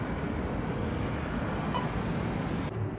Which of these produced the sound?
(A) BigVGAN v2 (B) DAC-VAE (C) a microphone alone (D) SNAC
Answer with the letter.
C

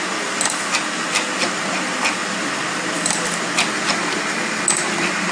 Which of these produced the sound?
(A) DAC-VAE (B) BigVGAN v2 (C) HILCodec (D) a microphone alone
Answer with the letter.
D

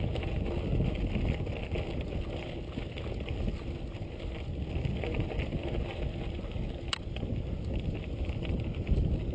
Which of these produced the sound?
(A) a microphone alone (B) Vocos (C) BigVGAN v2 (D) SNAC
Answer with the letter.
A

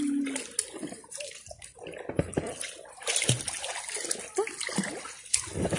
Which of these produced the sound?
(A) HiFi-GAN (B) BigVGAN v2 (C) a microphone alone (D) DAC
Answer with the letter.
C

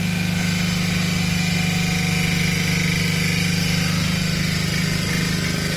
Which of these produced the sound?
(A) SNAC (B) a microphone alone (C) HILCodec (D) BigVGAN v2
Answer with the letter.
B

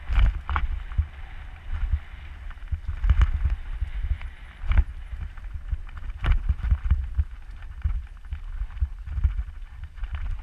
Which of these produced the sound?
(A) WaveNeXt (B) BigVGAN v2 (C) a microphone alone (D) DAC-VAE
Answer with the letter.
C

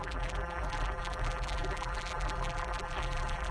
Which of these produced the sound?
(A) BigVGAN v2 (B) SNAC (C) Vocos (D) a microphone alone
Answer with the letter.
A